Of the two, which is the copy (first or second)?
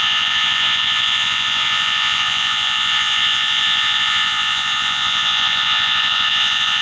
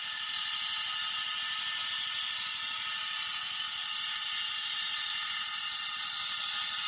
first